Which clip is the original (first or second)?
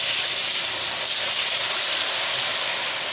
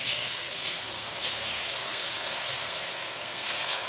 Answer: first